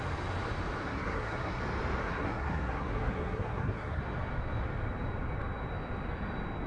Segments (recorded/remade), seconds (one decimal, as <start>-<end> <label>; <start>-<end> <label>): 0.0-0.8 recorded; 0.8-1.6 remade; 1.6-2.0 recorded; 2.0-4.0 remade; 4.0-6.7 recorded